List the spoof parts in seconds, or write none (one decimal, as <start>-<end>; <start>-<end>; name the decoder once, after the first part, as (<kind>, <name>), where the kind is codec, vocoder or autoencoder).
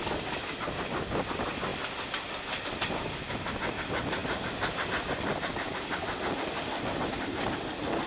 none